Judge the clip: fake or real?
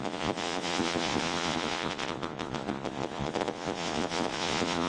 fake